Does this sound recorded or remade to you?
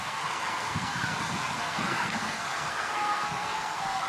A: remade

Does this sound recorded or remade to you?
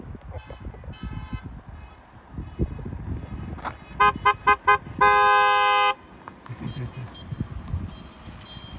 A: recorded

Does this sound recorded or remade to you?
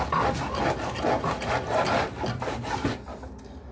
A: recorded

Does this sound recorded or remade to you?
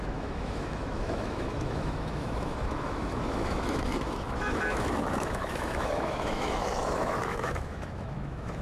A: remade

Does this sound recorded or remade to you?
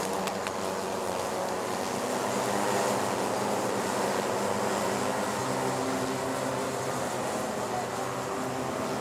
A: recorded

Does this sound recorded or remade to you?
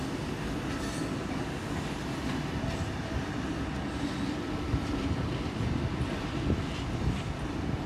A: recorded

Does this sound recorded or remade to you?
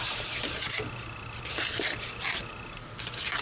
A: recorded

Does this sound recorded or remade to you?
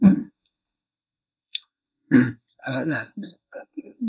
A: remade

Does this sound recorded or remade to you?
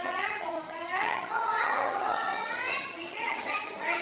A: remade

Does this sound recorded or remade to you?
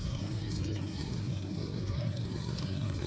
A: remade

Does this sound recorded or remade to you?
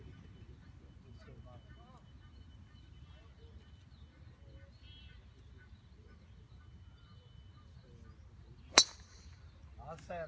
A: recorded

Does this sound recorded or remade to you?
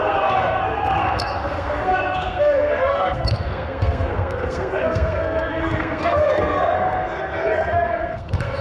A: remade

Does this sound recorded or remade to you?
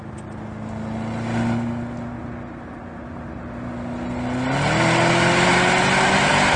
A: recorded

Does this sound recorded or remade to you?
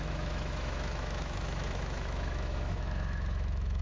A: remade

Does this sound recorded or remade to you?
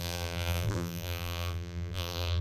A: remade